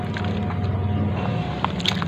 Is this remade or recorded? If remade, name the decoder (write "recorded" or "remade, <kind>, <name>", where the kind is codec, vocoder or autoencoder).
recorded